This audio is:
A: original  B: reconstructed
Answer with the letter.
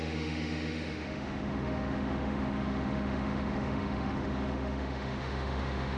B